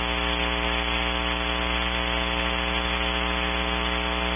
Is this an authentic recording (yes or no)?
yes